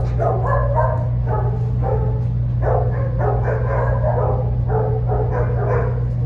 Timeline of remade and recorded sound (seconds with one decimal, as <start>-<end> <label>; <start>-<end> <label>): 0.0-6.3 recorded